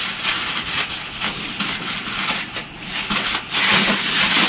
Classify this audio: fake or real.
real